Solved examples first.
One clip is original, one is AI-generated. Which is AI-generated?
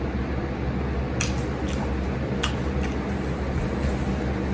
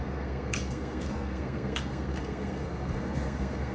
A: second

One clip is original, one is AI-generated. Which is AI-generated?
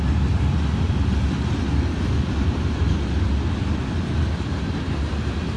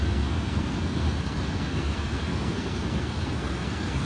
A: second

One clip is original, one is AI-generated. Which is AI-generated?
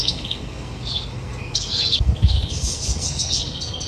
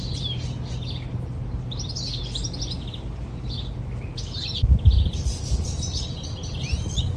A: first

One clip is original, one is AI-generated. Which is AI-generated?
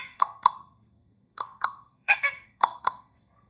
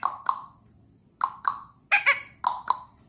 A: first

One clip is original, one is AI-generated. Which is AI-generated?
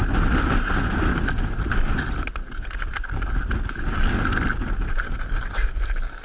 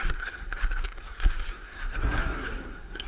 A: second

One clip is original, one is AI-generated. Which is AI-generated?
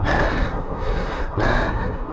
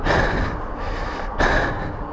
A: first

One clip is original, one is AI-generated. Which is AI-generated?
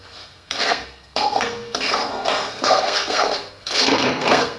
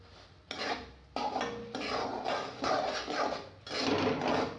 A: first